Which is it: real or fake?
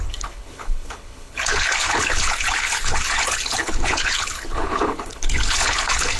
fake